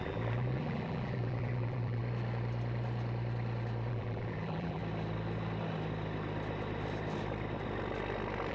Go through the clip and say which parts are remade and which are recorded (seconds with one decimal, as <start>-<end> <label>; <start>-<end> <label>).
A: 0.0-2.0 remade; 2.0-3.9 recorded; 3.9-4.8 remade; 4.8-8.5 recorded